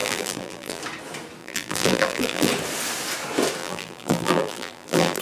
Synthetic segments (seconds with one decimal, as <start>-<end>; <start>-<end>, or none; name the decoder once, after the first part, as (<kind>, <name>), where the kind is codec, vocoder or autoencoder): 0.0-0.8 (vocoder, BigVGAN v2); 1.4-2.5; 3.6-5.2